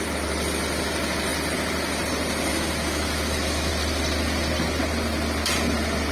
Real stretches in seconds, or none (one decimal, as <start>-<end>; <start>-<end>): 0.0-2.5; 3.7-6.1